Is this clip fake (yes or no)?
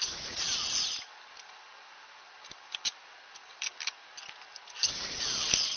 no